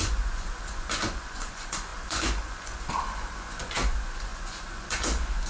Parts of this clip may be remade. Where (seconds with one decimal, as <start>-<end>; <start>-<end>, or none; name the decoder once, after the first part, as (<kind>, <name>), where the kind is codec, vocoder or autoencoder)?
0.0-5.5 (vocoder, Vocos)